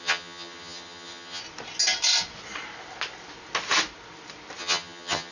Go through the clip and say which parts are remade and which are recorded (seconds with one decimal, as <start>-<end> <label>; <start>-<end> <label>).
0.0-1.4 remade; 1.4-4.6 recorded; 4.6-5.3 remade